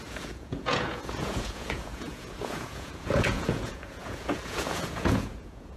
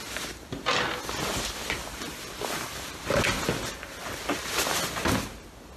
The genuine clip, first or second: second